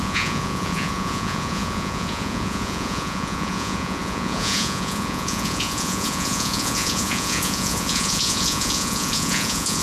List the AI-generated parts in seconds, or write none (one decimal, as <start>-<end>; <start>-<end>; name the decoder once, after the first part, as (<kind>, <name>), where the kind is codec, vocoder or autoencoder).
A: 0.0-9.8 (vocoder, Vocos)

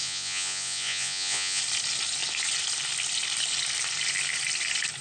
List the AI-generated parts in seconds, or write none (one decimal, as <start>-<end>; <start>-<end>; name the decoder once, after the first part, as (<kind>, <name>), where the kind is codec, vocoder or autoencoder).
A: 0.0-1.6 (vocoder, Vocos)

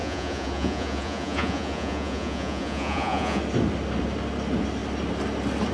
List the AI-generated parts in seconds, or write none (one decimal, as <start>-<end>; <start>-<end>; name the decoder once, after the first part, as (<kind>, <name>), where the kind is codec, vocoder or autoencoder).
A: 0.0-3.4 (vocoder, Vocos)

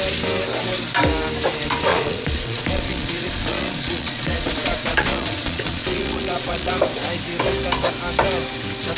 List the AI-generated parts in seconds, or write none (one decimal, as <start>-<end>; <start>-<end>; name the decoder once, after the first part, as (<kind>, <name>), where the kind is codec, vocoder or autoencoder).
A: 1.9-6.7 (vocoder, Vocos)

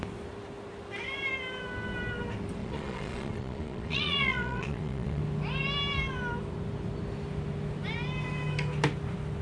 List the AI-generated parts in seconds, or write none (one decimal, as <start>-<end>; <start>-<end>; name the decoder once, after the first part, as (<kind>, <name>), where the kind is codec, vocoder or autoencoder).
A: 2.6-5.2 (vocoder, Vocos)

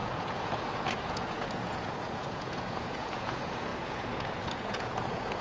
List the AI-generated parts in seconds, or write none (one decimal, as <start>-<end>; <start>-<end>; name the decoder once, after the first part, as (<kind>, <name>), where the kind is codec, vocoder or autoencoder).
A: 0.0-5.4 (vocoder, Vocos)